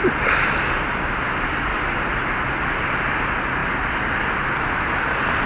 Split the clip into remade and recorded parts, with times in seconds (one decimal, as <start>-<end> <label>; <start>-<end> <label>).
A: 0.0-5.5 recorded